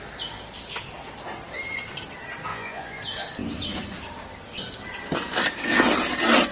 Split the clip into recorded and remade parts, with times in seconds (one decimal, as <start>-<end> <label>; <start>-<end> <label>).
0.0-2.5 recorded; 2.5-3.0 remade; 3.0-6.5 recorded